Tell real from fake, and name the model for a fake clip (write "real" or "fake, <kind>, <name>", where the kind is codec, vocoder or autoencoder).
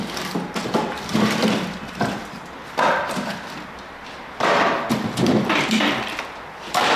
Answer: fake, vocoder, BigVGAN v2